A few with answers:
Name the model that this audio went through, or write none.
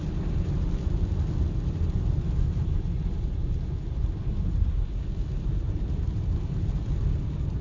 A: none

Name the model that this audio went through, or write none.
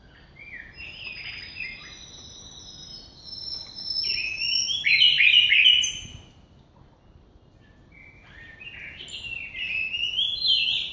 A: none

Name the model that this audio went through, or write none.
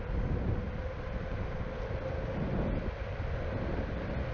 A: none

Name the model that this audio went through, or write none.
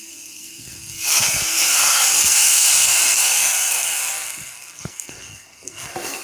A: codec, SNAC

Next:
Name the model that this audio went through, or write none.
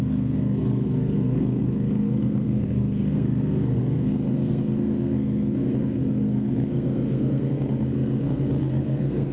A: codec, SNAC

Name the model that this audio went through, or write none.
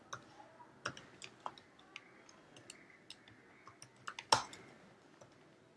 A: none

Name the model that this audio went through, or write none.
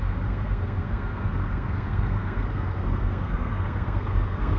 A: codec, SNAC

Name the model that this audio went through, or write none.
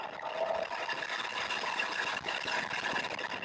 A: none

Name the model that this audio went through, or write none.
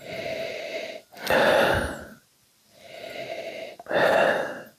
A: none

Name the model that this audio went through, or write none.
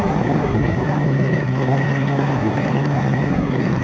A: codec, SNAC